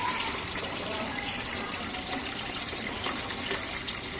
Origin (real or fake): fake